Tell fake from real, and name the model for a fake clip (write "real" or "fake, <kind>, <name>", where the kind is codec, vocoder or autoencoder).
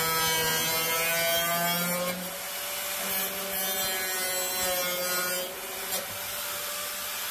real